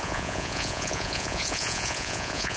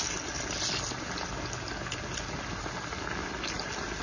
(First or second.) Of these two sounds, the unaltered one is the second